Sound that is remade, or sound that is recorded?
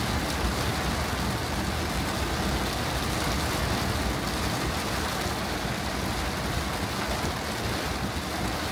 recorded